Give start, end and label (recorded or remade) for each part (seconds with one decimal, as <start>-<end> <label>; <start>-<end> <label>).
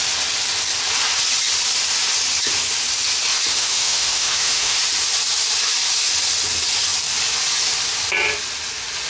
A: 0.0-3.5 recorded; 3.5-4.8 remade; 4.8-9.1 recorded